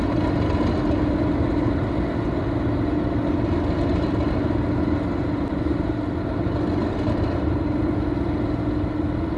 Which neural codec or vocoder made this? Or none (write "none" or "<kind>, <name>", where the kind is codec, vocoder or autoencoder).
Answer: none